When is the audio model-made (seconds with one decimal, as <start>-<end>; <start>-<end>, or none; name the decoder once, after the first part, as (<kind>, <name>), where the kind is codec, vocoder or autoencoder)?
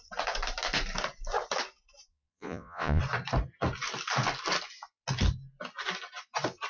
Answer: 2.1-3.0 (vocoder, Vocos)